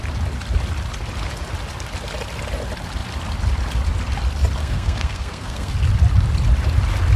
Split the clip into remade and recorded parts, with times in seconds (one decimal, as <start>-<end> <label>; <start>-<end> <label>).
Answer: 0.0-4.6 recorded; 4.6-5.7 remade; 5.7-7.2 recorded